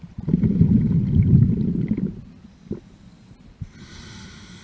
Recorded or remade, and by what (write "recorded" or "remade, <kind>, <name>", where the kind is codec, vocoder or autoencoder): recorded